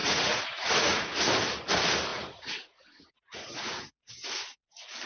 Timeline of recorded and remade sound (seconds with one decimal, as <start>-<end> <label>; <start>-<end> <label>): 0.0-1.1 remade; 1.1-2.1 recorded; 2.1-4.1 remade; 4.1-5.1 recorded